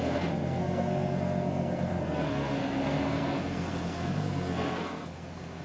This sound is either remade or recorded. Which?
remade